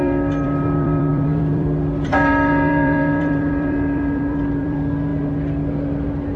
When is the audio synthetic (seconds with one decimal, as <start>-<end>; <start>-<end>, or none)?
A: 0.0-5.1